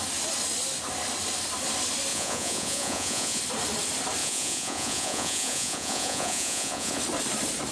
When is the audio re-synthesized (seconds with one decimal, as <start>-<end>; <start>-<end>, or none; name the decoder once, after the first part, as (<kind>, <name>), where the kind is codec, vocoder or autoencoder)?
2.1-3.4 (vocoder, Vocos); 4.2-7.0

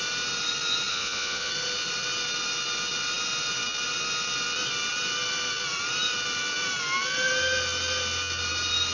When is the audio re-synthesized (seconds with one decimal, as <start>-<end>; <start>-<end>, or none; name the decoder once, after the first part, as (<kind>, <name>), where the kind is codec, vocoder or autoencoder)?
0.9-1.5 (vocoder, Vocos)

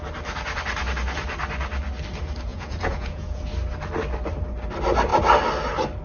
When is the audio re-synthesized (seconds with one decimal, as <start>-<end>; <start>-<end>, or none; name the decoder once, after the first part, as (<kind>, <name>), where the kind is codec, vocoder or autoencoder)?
2.5-3.4 (vocoder, Vocos)

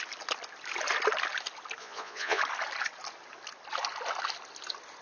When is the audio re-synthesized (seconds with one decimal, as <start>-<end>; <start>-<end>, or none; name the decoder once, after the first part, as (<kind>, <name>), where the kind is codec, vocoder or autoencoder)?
1.8-2.4 (vocoder, Vocos)

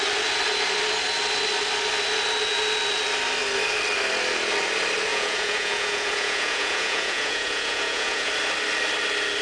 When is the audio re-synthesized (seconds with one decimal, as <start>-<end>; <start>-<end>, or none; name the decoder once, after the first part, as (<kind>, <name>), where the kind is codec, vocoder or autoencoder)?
5.1-8.3 (vocoder, Vocos)

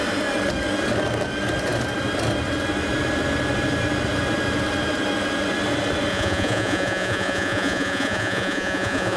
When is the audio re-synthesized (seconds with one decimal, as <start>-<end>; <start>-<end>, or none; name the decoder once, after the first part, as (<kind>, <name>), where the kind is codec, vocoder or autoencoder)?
6.1-9.2 (vocoder, Vocos)

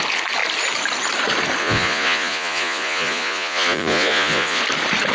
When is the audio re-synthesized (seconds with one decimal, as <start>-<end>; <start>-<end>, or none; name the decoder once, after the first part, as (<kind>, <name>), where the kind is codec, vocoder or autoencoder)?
1.6-4.6 (vocoder, Vocos)

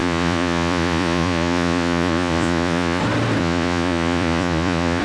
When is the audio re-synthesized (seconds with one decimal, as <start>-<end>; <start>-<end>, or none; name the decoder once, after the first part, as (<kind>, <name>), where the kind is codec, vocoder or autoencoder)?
0.0-3.0 (vocoder, Vocos); 3.4-5.0